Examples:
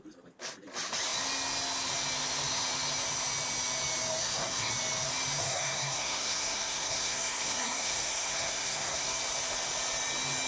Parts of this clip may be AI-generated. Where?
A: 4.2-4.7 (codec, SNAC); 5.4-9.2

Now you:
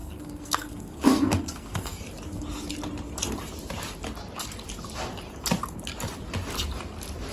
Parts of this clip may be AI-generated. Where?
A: 0.0-2.0 (codec, SNAC)

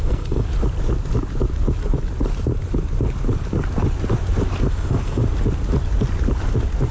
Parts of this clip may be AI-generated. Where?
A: 0.0-0.5 (codec, SNAC); 4.6-5.2

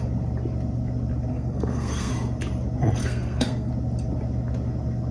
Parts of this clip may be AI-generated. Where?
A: 1.3-2.1 (codec, SNAC); 3.0-3.7

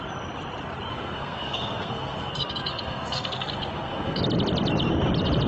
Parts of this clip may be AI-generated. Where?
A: 0.9-4.2 (codec, SNAC)

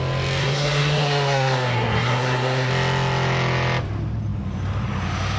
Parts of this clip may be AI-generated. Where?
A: 0.4-2.7 (codec, SNAC)